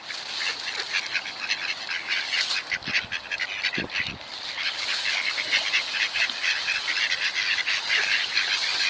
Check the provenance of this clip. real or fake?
real